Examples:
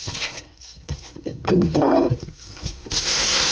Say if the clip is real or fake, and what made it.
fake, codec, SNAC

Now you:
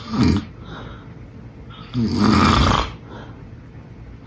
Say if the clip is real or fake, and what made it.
real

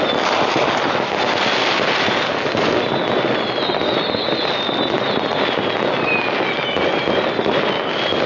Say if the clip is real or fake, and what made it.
real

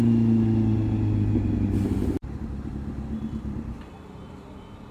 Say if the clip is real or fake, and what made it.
real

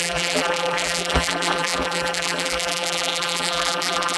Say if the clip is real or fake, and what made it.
fake, vocoder, BigVGAN v2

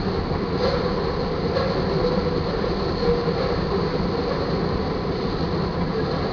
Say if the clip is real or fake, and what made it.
real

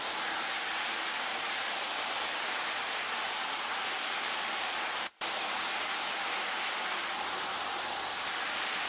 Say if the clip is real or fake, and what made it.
real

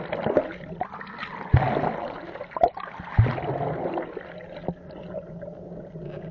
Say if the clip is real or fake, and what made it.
real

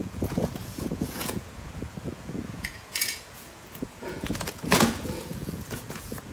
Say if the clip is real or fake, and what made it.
fake, vocoder, Vocos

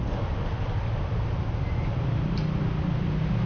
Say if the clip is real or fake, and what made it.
real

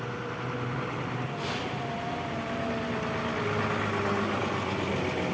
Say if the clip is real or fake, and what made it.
real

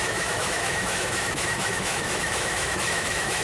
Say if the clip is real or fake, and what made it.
fake, autoencoder, DAC-VAE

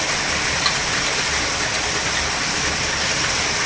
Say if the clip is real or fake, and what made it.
real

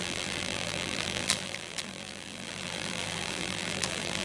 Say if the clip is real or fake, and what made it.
fake, vocoder, BigVGAN v2